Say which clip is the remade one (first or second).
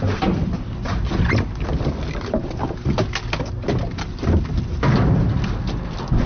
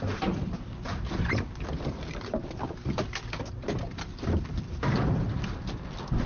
second